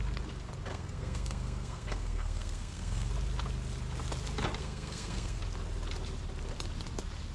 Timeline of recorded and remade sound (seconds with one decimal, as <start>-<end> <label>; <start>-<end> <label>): 0.0-0.7 recorded; 0.7-3.1 remade; 3.1-4.6 recorded; 4.6-5.4 remade; 5.4-7.3 recorded